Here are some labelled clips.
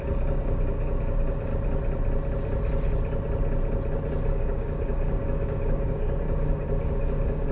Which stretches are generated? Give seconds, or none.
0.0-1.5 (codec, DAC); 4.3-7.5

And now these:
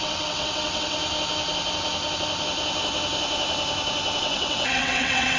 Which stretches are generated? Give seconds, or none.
0.0-1.0 (vocoder, WaveNeXt); 4.2-5.4

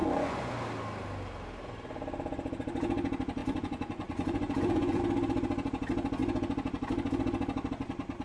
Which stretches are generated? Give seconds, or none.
0.0-0.5 (vocoder, Vocos); 3.4-5.0

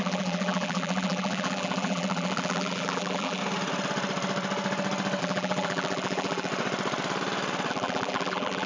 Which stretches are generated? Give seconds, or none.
0.0-3.4 (vocoder, BigVGAN v2); 5.2-6.5; 7.7-8.7